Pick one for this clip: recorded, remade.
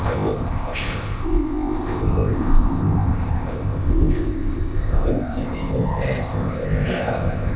remade